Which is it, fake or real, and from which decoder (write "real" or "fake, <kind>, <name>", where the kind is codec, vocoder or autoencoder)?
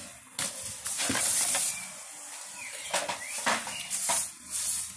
real